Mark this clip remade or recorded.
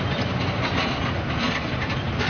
recorded